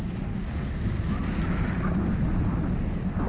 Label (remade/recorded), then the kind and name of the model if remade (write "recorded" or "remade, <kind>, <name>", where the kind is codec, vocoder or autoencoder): recorded